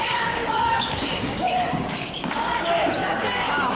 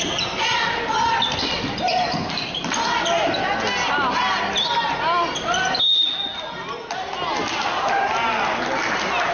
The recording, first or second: second